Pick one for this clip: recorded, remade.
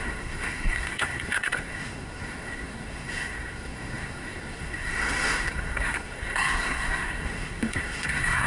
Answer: remade